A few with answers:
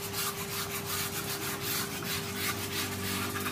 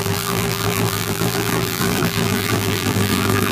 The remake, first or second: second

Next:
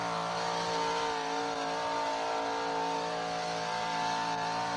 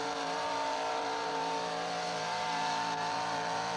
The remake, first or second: second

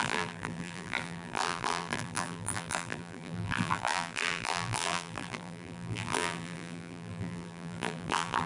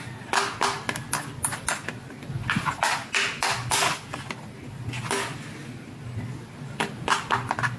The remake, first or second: first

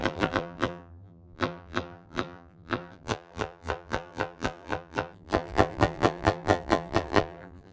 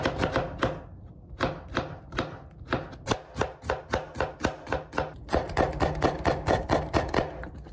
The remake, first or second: first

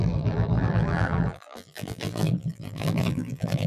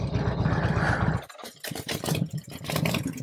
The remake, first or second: first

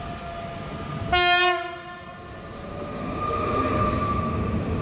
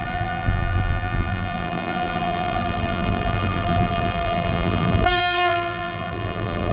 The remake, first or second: second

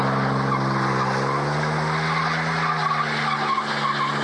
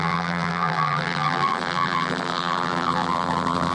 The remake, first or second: second